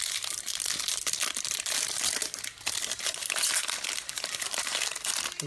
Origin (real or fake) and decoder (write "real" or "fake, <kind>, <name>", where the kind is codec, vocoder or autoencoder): real